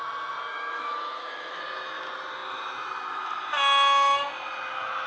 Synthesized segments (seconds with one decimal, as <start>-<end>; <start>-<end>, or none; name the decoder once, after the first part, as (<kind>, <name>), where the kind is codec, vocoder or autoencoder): 0.5-1.6 (autoencoder, DAC-VAE)